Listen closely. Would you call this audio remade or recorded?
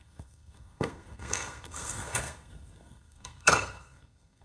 remade